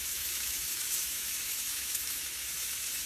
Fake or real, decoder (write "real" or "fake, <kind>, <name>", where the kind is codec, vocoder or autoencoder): fake, autoencoder, DAC-VAE